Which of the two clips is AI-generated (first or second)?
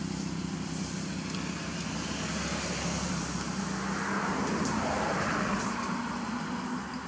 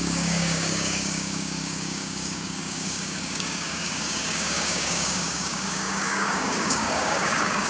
second